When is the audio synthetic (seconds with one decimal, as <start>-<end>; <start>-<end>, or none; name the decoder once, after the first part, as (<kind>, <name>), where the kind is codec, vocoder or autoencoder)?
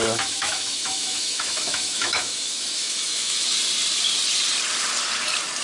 0.0-3.4 (autoencoder, DAC-VAE)